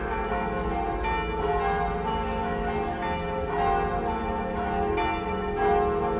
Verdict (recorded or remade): recorded